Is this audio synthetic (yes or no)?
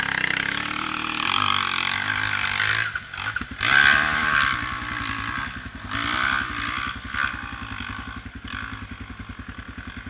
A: no